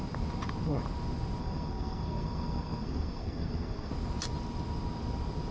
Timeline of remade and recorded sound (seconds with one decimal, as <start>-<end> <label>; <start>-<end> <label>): 0.0-1.4 recorded; 1.4-3.9 remade; 3.9-5.5 recorded